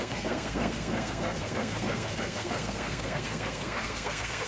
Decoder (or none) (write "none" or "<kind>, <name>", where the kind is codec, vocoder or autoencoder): codec, SNAC